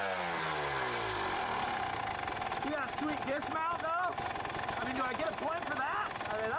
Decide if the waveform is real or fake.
real